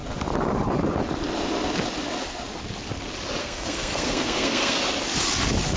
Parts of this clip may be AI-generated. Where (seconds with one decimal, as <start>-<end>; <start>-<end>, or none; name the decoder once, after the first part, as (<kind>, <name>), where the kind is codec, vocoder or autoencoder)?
3.4-4.8 (codec, SNAC)